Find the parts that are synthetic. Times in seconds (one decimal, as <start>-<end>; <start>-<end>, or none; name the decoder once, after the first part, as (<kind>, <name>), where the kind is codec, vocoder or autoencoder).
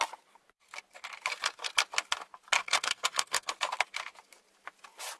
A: 2.6-3.5 (codec, SNAC)